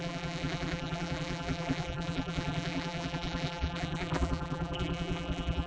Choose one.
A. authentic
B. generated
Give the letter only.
B